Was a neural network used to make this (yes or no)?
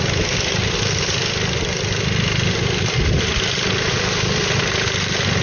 no